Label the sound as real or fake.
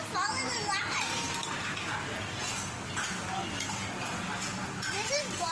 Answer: real